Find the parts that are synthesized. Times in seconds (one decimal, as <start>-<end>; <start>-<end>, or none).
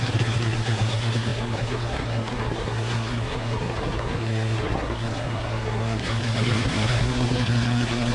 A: 0.0-8.1